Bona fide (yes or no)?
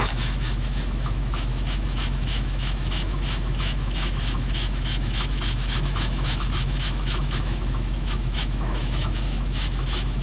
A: no